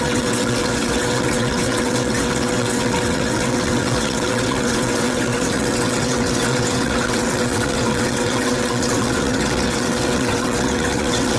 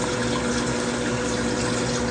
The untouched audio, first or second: second